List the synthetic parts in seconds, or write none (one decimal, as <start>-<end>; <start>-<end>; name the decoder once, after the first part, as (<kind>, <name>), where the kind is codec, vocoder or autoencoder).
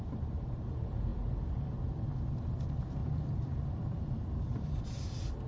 0.0-5.5 (vocoder, BigVGAN v2)